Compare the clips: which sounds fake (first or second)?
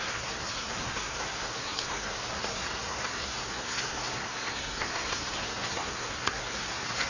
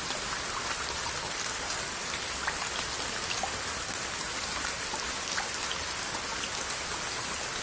first